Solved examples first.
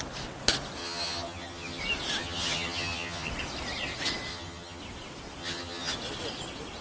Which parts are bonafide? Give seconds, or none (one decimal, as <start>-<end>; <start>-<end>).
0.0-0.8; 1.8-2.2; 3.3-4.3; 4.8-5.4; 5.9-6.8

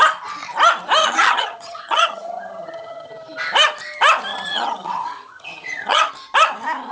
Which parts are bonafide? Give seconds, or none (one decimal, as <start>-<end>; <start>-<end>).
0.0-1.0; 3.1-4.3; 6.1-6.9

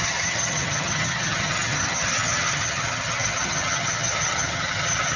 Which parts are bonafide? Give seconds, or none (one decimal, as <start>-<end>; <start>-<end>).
none

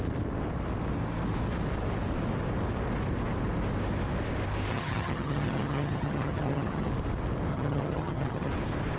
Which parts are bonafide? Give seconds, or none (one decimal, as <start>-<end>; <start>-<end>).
0.0-4.7; 6.9-7.5; 8.5-9.0

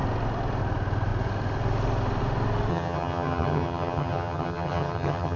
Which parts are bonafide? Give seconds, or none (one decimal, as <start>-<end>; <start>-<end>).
0.0-2.7

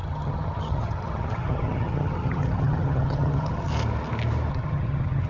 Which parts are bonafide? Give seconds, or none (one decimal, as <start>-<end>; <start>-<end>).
3.7-4.5

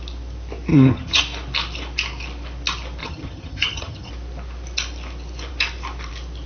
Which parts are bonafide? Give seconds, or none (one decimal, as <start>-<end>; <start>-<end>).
0.0-0.7; 1.2-3.0; 4.1-6.5